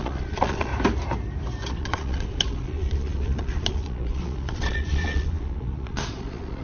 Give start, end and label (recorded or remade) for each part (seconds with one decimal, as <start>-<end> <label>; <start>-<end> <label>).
0.0-0.7 remade; 0.7-1.7 recorded; 1.7-6.6 remade

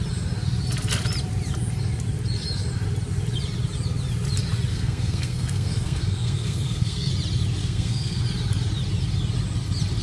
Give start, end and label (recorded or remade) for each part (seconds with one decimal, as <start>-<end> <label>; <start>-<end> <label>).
0.0-4.7 recorded; 4.7-7.1 remade; 7.1-7.6 recorded; 7.6-8.2 remade; 8.2-10.0 recorded

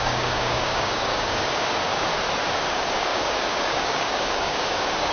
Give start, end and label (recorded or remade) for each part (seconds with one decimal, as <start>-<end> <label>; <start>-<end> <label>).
0.0-2.1 remade; 2.1-2.6 recorded; 2.6-5.1 remade

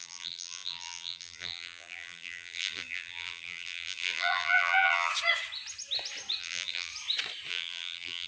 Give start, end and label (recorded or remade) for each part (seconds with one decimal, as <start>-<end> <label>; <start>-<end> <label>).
0.0-5.1 remade; 5.1-6.4 recorded; 6.4-6.9 remade; 6.9-7.5 recorded; 7.5-8.3 remade

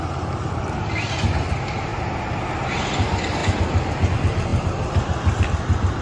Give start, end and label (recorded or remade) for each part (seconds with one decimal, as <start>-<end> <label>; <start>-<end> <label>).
0.0-6.0 recorded

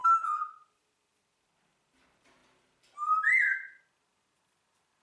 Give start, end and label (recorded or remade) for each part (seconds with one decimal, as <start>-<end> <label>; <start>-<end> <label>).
0.0-0.7 recorded; 0.7-2.4 remade; 2.4-3.8 recorded; 3.8-5.0 remade

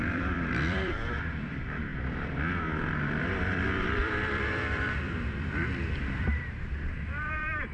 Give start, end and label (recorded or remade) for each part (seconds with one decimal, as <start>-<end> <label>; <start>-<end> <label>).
0.0-7.7 remade